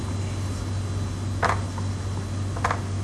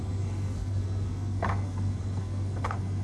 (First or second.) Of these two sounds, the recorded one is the first